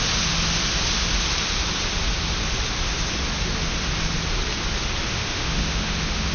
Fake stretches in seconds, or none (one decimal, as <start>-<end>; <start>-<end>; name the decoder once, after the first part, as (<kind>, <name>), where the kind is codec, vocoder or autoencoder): 5.1-6.3 (autoencoder, DAC-VAE)